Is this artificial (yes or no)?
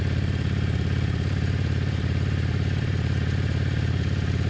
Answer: yes